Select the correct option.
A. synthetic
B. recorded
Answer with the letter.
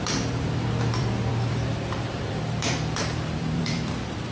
A